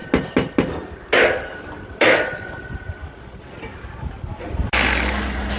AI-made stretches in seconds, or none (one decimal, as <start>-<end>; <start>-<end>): 3.7-4.3